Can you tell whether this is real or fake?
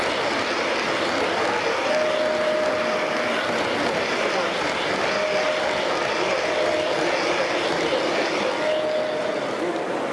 real